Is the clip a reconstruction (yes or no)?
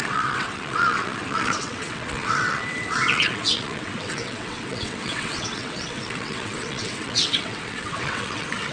yes